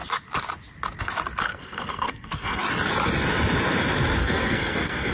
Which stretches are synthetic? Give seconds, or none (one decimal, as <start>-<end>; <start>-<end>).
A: 1.4-2.6; 4.2-5.1